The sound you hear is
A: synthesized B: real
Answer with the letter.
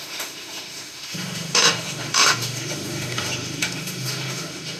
A